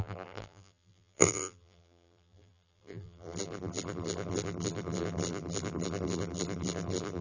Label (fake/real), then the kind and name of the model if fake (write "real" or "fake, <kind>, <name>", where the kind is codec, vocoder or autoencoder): fake, vocoder, BigVGAN v2